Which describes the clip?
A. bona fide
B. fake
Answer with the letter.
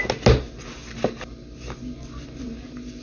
A